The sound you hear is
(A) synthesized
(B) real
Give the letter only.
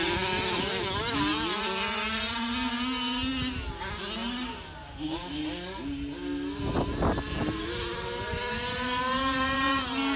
B